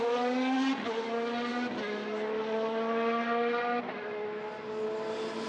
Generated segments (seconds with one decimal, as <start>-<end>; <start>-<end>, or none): none